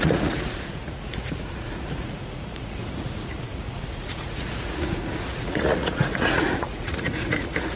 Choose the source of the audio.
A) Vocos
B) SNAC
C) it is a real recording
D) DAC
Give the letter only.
A